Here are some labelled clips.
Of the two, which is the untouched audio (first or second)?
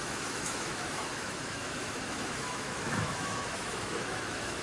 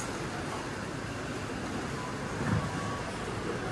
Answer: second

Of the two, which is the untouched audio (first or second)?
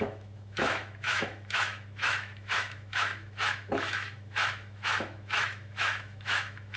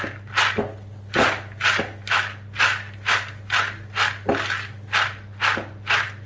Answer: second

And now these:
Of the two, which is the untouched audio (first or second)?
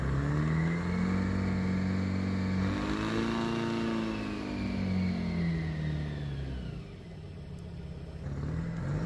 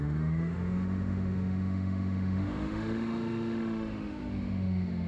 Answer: first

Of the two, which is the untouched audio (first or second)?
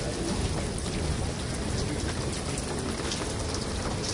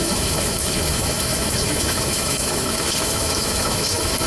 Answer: first